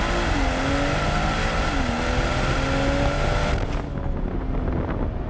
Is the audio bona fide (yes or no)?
yes